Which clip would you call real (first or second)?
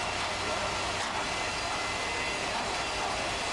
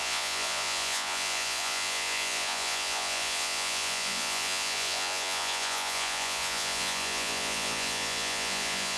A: first